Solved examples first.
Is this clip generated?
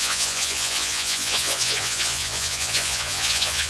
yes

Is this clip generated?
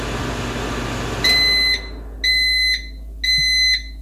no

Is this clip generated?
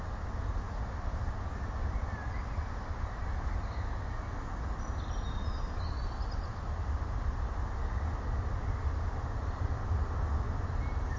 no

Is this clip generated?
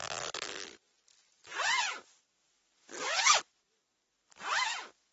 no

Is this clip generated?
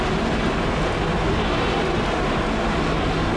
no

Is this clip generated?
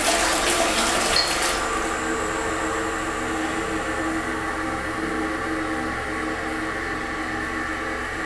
no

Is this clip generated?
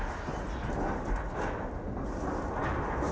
no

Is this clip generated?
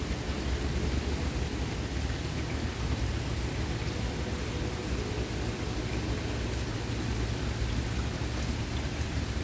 no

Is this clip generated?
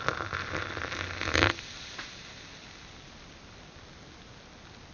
no